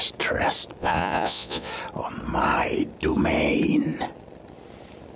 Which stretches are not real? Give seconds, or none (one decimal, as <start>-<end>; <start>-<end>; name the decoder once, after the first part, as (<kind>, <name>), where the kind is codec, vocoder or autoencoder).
0.8-1.7 (vocoder, Vocos)